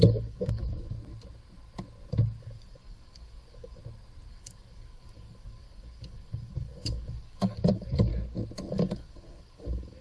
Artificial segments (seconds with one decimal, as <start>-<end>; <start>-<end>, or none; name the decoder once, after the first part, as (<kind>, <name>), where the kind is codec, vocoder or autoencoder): 0.0-0.6 (codec, DAC); 2.4-3.8; 4.3-8.1; 8.7-10.0